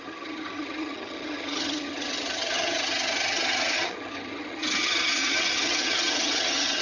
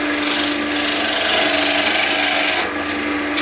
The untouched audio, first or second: second